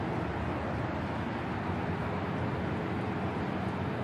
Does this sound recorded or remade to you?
recorded